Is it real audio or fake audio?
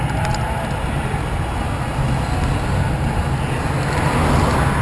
real